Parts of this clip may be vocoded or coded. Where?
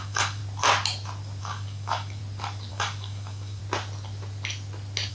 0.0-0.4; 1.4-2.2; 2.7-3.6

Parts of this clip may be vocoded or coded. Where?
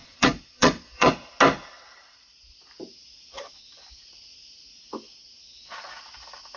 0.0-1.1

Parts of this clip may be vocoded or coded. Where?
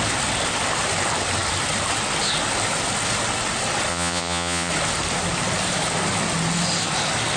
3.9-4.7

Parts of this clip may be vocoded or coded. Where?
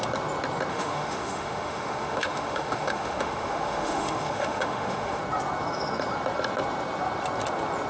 0.7-5.2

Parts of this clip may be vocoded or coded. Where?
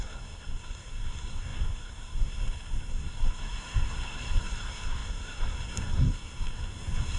0.0-7.2